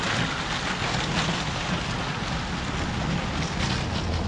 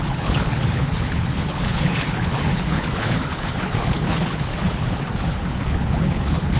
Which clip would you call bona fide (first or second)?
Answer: first